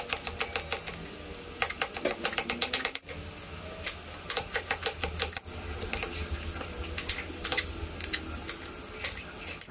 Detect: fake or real real